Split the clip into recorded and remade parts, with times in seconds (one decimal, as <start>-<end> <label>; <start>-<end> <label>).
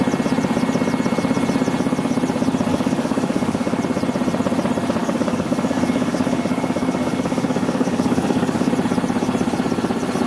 0.0-2.7 recorded; 2.7-3.8 remade; 3.8-5.0 recorded; 5.0-8.7 remade; 8.7-10.3 recorded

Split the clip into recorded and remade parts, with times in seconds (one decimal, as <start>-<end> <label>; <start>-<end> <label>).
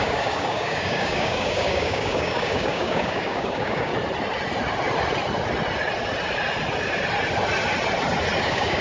0.0-3.9 remade; 3.9-8.4 recorded; 8.4-8.8 remade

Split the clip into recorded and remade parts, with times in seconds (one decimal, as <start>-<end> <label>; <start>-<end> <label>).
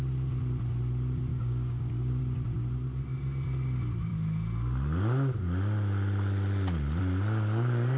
0.0-1.3 recorded; 1.3-2.2 remade; 2.2-8.0 recorded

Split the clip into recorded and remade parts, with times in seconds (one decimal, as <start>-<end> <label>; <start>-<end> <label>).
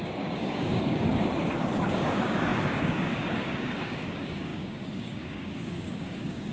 0.0-6.5 remade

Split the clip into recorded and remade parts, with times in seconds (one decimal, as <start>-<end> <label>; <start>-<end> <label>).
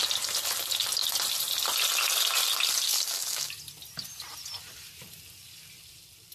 0.0-2.9 recorded; 2.9-3.5 remade; 3.5-6.3 recorded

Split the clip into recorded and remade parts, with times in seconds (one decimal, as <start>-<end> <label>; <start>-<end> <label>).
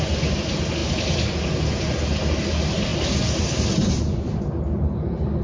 0.0-5.4 recorded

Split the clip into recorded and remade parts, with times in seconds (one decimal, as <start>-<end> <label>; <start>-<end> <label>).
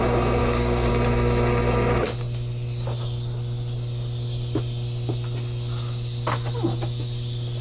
0.0-0.4 recorded; 0.4-0.9 remade; 0.9-7.6 recorded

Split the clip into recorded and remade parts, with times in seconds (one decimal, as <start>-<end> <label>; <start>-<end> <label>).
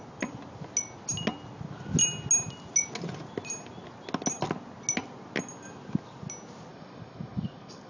0.0-6.7 recorded; 6.7-7.9 remade